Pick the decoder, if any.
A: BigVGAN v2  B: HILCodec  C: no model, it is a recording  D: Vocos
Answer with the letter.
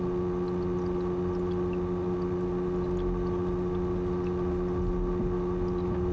C